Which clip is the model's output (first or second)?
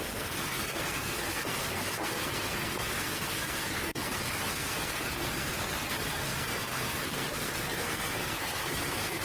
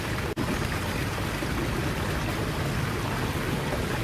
first